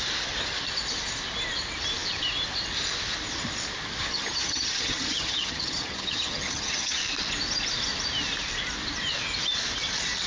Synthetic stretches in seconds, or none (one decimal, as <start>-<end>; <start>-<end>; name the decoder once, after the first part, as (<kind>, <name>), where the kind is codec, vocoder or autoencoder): 4.1-7.0 (vocoder, HiFi-GAN)